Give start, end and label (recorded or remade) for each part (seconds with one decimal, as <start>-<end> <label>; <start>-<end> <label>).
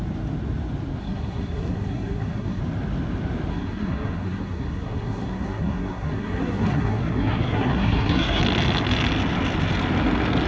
0.0-1.0 recorded; 1.0-2.6 remade; 2.6-3.5 recorded; 3.5-8.4 remade; 8.4-10.5 recorded